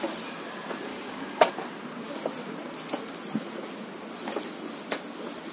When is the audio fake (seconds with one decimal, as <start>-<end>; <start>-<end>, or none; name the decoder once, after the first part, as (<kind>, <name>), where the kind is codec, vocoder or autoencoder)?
0.9-1.5 (codec, DAC)